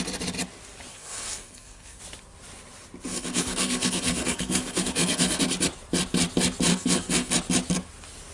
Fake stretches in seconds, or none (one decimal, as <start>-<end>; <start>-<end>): 0.9-2.0; 3.1-5.4; 6.7-7.3